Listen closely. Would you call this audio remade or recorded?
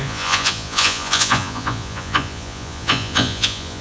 remade